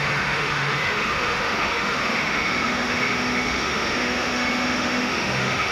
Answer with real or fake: fake